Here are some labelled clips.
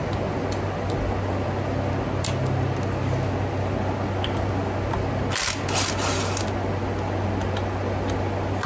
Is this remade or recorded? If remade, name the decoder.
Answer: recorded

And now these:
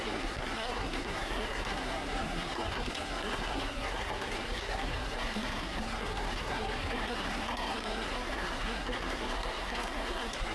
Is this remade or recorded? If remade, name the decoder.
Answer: remade, codec, SNAC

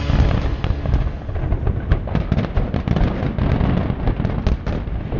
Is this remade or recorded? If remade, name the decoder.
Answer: recorded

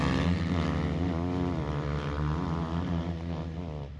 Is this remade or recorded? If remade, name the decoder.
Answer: recorded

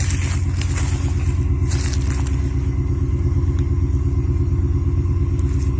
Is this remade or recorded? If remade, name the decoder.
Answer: recorded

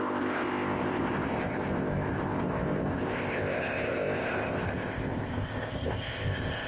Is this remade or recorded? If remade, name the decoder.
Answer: remade, codec, ZipCodec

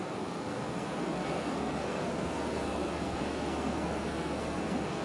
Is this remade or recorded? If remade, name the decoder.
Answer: remade, codec, SNAC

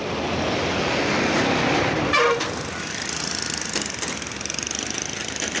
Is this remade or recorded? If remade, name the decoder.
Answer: remade, vocoder, BigVGAN v2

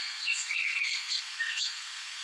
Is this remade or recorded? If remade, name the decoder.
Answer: remade, codec, SNAC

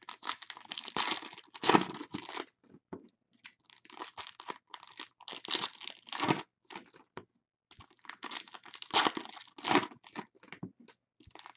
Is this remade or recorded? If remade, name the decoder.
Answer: recorded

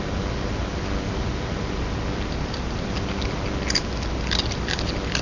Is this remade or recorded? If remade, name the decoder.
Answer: recorded